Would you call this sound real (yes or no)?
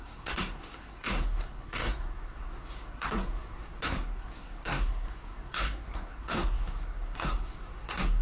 no